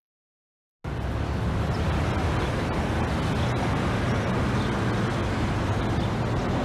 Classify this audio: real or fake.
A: real